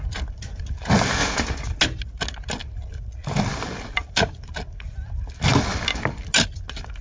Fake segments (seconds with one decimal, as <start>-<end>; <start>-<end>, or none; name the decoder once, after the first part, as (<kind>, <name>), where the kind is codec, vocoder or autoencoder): none